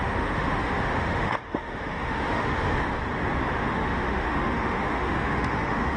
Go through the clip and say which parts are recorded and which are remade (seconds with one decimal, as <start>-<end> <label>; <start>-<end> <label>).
0.0-2.7 remade; 2.7-3.5 recorded; 3.5-6.0 remade